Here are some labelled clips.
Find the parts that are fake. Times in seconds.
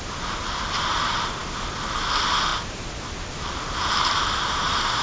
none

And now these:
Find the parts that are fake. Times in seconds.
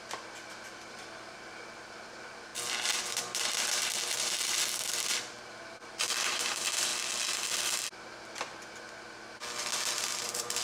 0.0-6.9 (vocoder, BigVGAN v2); 9.9-10.6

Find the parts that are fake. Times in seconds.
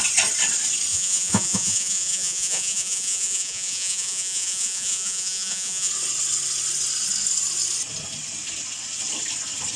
0.9-5.9 (vocoder, Vocos)